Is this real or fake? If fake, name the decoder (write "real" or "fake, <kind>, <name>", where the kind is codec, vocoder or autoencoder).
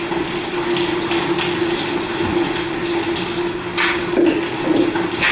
real